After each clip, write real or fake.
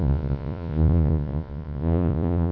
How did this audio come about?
fake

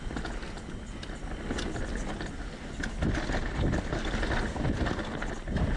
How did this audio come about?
real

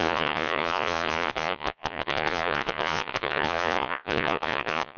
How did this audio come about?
fake